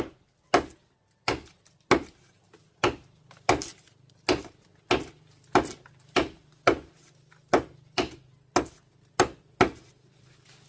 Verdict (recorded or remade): recorded